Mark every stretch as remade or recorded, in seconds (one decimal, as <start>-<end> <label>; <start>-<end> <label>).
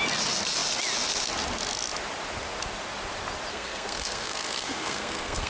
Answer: 0.0-3.5 recorded; 3.5-5.5 remade